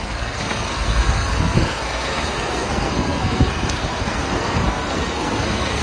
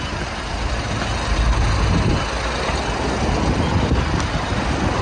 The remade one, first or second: first